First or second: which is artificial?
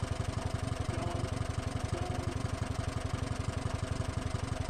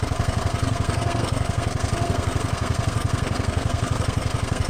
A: second